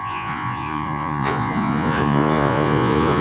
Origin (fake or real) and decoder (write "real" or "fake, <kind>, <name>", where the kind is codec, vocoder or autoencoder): fake, vocoder, Vocos